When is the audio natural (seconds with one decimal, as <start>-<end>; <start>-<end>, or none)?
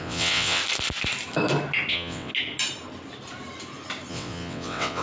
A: 0.6-1.9; 2.3-4.1